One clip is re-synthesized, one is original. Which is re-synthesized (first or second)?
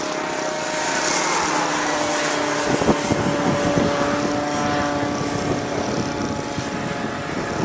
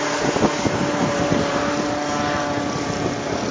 second